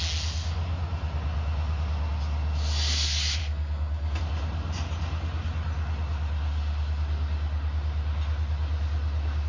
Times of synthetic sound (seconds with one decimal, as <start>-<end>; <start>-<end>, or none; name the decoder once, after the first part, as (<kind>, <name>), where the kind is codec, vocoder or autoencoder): 3.4-4.2 (codec, SNAC)